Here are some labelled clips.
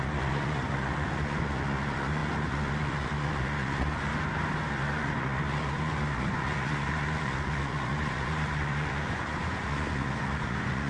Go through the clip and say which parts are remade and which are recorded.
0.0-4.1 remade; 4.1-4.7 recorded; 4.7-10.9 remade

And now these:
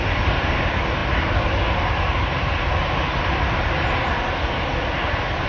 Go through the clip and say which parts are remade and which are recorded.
0.0-5.5 recorded

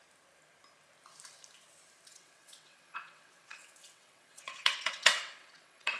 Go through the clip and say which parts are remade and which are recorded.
0.0-2.1 recorded; 2.1-6.0 remade

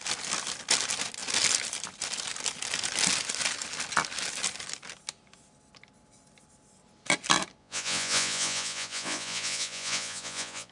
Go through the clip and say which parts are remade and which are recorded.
0.0-7.6 recorded; 7.6-10.7 remade

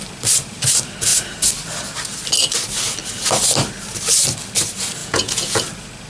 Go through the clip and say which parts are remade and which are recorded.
0.0-5.0 recorded; 5.0-5.6 remade; 5.6-6.1 recorded

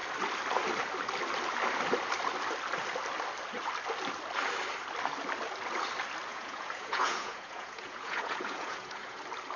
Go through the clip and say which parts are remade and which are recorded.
0.0-6.3 recorded; 6.3-9.2 remade; 9.2-9.6 recorded

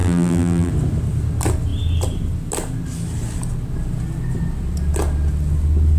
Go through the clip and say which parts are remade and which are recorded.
0.0-0.7 remade; 0.7-6.0 recorded